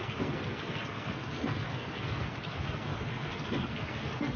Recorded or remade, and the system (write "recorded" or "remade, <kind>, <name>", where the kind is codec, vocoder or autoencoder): remade, codec, SNAC